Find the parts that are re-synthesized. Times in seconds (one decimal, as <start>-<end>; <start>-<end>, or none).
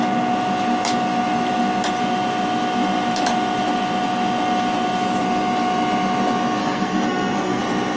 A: 6.6-7.6